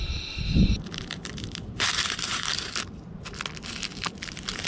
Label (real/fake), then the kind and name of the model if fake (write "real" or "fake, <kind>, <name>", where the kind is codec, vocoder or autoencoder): real